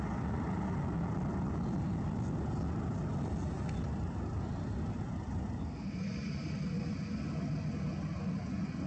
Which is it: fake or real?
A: real